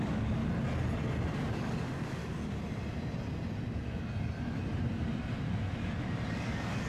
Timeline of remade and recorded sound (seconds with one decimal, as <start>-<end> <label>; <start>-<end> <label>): 0.0-0.4 remade; 0.4-1.3 recorded; 1.3-2.2 remade; 2.2-6.3 recorded; 6.3-6.9 remade